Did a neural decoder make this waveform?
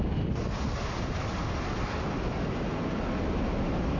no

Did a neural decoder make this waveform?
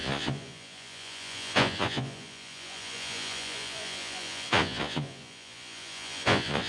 yes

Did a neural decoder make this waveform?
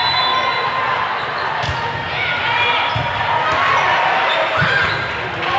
no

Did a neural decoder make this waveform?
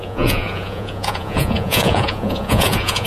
yes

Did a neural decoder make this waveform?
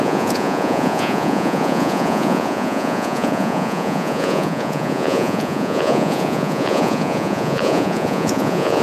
yes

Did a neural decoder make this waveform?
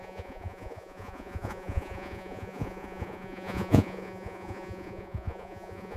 yes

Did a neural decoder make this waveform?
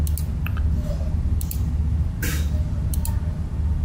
no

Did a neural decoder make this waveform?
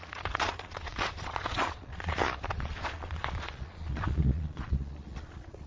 yes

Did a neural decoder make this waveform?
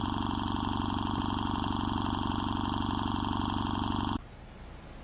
no